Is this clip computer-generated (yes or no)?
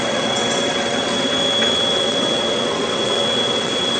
yes